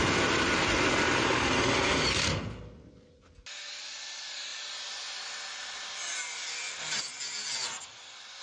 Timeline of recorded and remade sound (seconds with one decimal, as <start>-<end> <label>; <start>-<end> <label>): 0.0-8.4 recorded